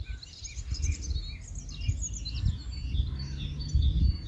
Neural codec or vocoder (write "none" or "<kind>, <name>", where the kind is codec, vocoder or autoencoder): none